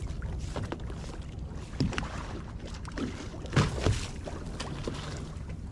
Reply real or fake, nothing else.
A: real